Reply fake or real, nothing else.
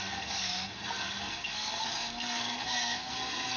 fake